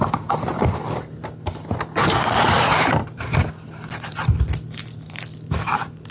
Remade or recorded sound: remade